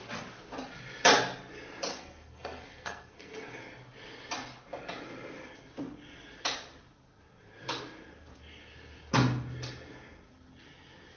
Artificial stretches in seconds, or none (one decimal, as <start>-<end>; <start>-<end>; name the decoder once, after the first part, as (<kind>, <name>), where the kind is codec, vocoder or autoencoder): 1.9-3.6 (codec, SNAC)